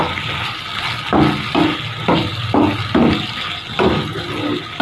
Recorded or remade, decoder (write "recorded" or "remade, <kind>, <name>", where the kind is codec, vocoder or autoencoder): recorded